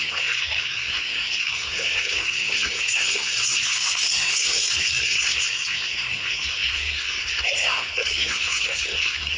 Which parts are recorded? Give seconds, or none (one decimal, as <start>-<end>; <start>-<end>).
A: none